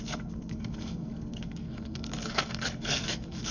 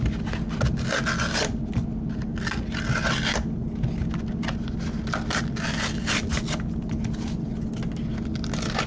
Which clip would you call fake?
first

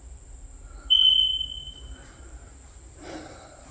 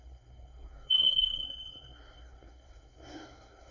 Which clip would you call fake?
second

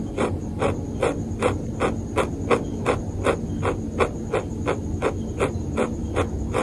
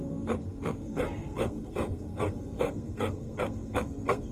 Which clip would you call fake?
second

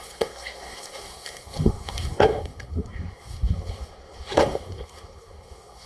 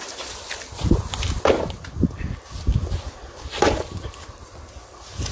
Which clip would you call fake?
first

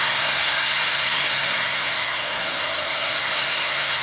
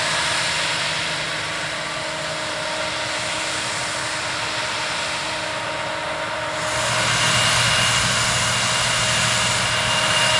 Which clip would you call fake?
first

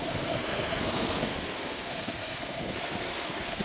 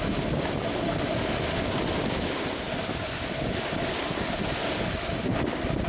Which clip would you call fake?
first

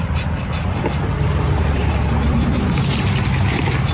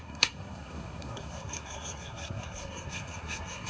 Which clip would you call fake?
second